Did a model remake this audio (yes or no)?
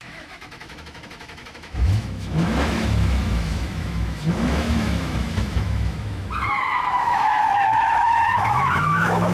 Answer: yes